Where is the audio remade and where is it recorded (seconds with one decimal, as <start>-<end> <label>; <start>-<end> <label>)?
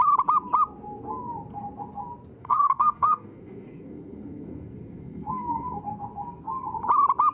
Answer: 0.0-2.4 recorded; 2.4-5.8 remade; 5.8-7.3 recorded